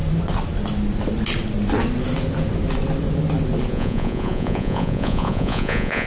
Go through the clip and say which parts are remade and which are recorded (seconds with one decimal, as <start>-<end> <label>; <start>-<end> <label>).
0.0-3.7 recorded; 3.7-6.1 remade